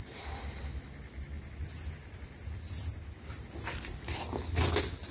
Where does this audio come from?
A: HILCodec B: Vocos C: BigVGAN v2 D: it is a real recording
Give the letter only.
D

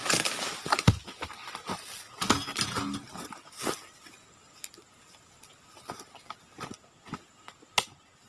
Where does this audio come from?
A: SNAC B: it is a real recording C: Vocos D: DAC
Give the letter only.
B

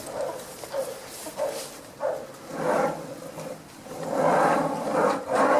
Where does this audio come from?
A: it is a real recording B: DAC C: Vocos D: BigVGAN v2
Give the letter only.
A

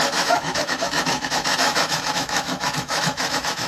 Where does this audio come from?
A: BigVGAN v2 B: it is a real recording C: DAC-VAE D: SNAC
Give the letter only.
C